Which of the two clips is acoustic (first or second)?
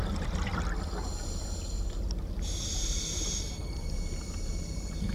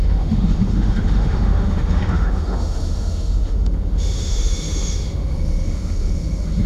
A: first